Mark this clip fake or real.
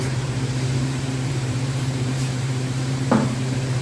fake